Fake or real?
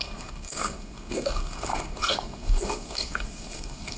fake